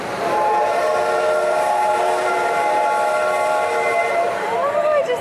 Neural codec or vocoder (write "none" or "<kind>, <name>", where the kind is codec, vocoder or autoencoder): vocoder, BigVGAN v2